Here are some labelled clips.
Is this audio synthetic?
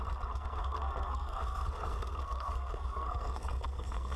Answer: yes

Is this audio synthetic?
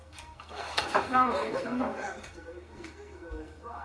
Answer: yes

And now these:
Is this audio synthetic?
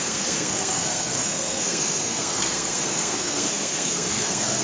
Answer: yes